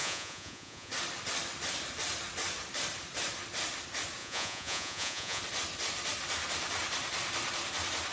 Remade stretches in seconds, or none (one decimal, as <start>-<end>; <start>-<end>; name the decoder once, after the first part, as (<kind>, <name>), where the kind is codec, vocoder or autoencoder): 0.0-0.9 (vocoder, Vocos); 4.2-5.4